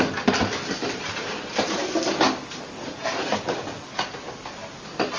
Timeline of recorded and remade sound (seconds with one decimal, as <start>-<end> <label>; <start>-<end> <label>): 0.0-5.2 recorded